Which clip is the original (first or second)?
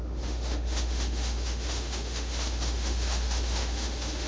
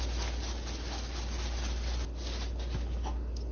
second